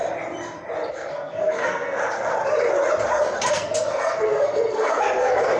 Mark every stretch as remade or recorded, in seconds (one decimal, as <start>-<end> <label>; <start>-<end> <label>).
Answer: 0.0-0.9 recorded; 0.9-2.4 remade; 2.4-3.5 recorded; 3.5-5.6 remade

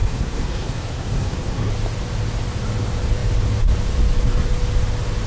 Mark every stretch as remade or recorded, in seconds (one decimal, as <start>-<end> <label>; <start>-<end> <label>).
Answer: 0.0-1.7 remade; 1.7-5.3 recorded

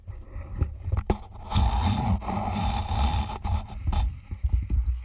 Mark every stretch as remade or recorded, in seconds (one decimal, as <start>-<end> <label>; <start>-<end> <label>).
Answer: 0.0-5.0 recorded